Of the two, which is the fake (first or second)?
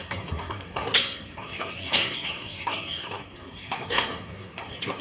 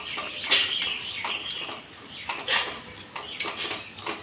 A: first